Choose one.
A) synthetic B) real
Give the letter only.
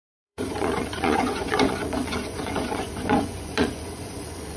A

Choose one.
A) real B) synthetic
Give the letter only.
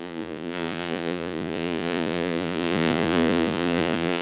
B